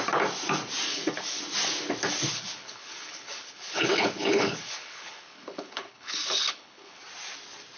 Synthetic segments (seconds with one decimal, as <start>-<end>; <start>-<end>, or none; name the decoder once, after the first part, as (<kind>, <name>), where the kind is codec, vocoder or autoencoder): 0.9-1.4 (codec, HILCodec); 2.3-7.0